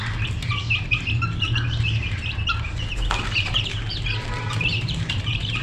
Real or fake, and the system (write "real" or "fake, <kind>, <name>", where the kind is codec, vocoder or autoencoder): fake, vocoder, BigVGAN v2